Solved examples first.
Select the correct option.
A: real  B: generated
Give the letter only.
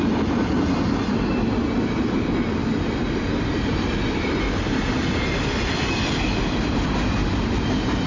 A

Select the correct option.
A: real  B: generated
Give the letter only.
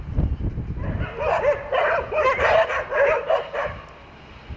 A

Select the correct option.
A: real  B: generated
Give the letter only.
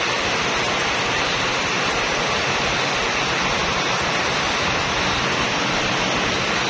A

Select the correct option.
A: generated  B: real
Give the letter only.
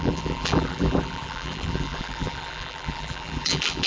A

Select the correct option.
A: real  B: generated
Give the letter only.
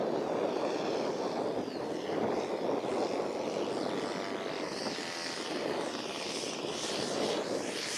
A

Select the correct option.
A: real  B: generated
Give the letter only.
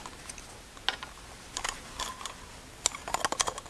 A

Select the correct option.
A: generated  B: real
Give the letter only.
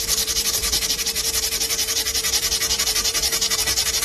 A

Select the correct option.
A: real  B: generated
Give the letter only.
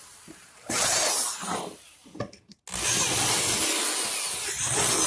A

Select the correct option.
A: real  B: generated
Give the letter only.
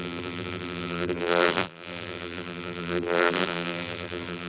B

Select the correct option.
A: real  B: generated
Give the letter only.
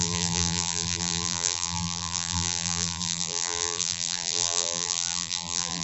B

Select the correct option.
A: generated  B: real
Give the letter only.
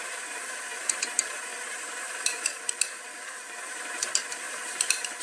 A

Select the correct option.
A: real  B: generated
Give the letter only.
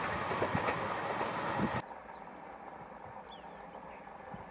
B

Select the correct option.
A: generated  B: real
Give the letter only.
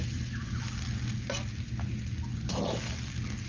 B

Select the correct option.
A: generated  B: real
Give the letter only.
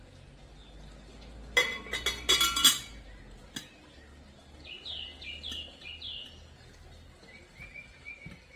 B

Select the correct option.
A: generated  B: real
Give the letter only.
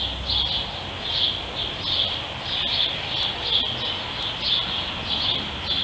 B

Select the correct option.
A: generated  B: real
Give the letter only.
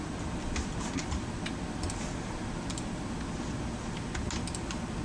B